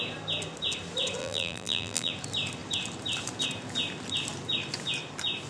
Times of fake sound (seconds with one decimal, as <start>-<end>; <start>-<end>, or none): 1.2-2.1

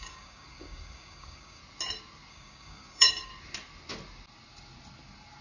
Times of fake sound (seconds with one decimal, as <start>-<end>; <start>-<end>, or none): 0.0-1.6; 2.3-3.3

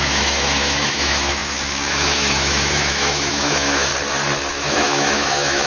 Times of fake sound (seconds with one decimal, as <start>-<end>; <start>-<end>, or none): 0.0-3.9; 4.5-5.7

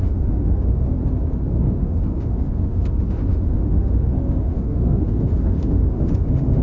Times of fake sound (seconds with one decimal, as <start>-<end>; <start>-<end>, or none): 0.0-1.0; 1.5-6.6